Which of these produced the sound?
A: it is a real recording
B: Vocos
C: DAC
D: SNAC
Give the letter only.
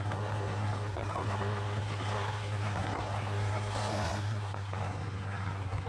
D